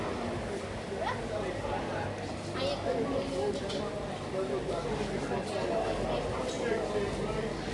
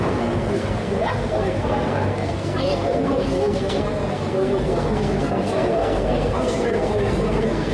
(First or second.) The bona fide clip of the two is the first